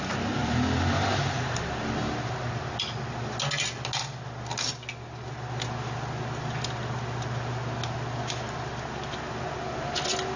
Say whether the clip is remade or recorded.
recorded